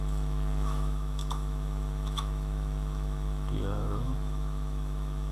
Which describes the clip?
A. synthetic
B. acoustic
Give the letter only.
A